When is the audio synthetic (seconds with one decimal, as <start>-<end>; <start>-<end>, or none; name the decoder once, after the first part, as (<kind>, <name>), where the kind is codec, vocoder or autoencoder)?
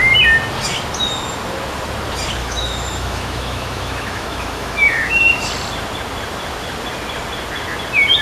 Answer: 2.4-5.5 (autoencoder, DAC-VAE)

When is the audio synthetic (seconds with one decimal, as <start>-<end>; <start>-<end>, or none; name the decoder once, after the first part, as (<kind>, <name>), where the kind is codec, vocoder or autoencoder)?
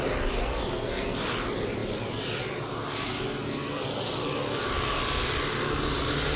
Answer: 0.4-1.2 (codec, SNAC); 3.4-3.9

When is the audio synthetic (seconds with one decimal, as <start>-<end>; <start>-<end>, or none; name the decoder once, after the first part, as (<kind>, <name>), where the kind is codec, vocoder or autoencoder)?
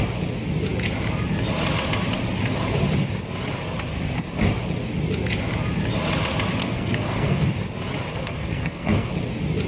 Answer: 6.6-7.5 (codec, SNAC); 8.1-9.1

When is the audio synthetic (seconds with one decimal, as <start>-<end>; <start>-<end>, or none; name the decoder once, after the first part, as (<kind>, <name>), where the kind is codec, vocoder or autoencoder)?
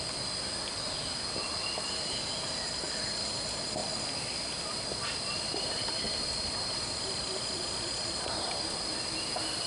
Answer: 3.8-9.0 (vocoder, BigVGAN v2)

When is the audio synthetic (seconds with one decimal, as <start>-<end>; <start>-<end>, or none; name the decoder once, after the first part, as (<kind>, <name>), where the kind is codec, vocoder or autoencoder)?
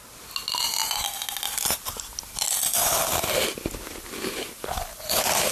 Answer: none